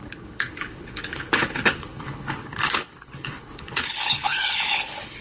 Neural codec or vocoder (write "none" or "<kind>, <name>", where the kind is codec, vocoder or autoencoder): codec, HILCodec